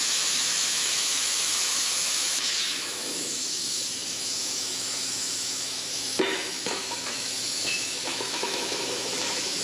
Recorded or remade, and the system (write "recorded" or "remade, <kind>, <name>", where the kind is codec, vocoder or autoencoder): remade, autoencoder, DAC-VAE